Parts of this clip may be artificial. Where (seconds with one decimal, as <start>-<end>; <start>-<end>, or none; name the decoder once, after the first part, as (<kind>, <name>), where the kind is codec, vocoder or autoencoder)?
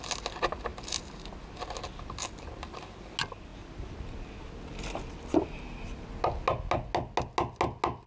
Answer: none